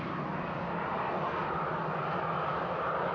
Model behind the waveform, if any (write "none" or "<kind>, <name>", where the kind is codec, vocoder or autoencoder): none